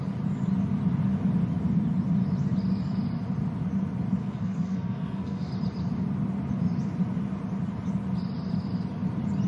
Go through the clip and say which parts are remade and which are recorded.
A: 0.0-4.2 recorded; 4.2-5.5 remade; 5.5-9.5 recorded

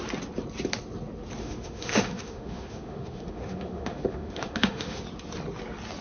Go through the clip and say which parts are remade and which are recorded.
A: 0.0-1.4 recorded; 1.4-5.0 remade; 5.0-6.0 recorded

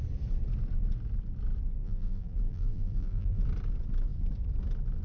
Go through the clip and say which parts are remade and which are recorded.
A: 0.0-1.8 recorded; 1.8-3.4 remade; 3.4-5.0 recorded